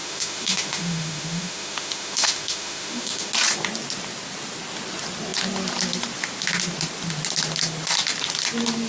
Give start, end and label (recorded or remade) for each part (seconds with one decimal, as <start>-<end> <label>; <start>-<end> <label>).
0.0-3.3 remade; 3.3-8.9 recorded